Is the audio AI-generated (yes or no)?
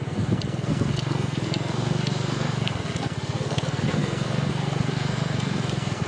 yes